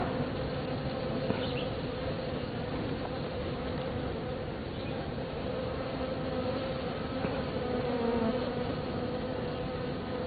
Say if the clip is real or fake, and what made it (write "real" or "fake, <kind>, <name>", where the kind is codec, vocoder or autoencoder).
real